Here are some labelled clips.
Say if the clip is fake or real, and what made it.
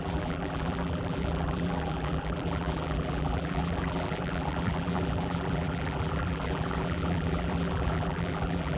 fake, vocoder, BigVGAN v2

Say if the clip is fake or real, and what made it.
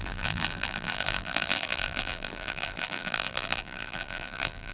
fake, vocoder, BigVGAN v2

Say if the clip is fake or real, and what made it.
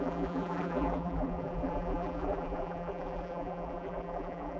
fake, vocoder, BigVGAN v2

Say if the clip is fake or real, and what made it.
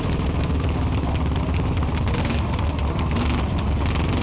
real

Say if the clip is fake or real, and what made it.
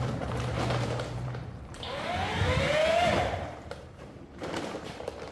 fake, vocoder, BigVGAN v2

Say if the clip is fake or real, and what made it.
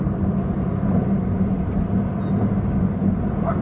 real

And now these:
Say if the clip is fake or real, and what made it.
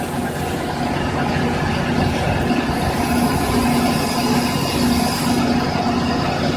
real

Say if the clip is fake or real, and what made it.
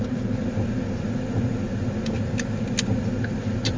real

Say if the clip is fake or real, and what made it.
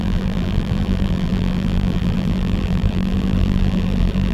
fake, vocoder, BigVGAN v2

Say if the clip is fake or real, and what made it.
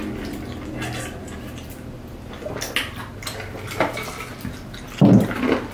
real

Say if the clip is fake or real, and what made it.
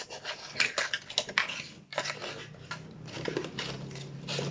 real